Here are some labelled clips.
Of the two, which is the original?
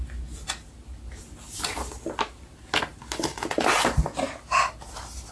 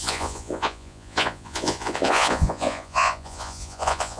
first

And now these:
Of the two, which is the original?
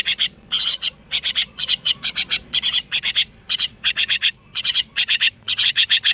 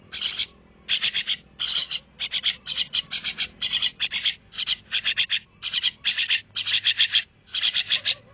second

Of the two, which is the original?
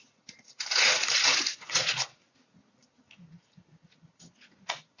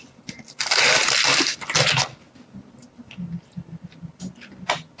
second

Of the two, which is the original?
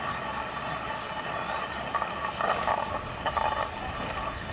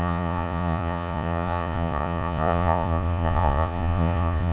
first